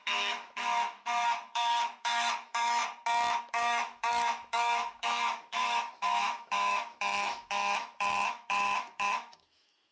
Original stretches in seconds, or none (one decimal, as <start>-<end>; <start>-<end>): 2.8-3.4